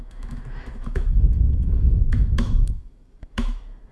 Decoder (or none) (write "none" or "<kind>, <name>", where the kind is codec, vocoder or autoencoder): autoencoder, DAC-VAE